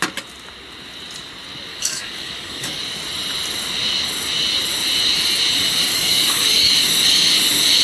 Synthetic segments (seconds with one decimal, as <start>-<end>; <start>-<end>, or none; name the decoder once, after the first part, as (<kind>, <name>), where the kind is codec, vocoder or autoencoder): 1.7-2.8 (codec, DAC); 5.9-6.7